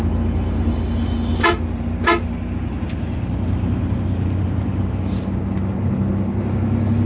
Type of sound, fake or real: real